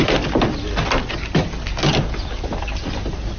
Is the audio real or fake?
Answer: real